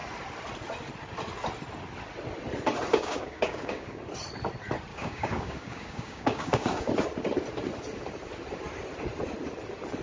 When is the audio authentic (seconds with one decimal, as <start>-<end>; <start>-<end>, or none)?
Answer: 0.0-2.9; 4.0-4.9; 6.9-10.0